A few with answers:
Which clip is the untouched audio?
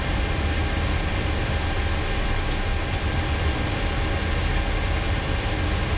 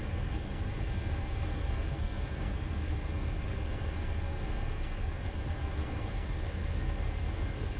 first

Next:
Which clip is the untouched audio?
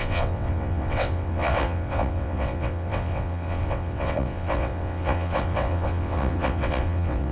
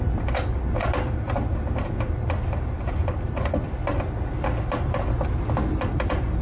second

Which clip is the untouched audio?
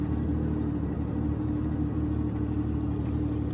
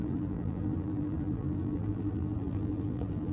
first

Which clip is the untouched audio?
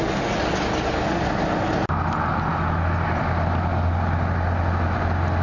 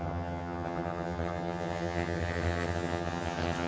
first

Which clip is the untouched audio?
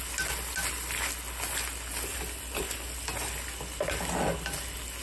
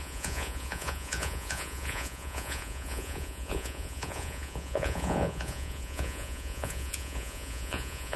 first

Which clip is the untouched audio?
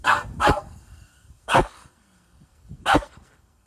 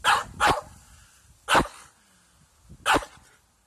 second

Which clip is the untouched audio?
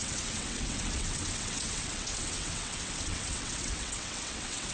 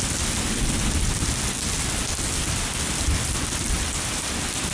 second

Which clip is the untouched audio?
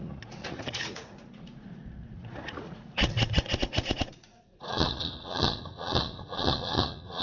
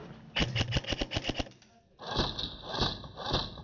second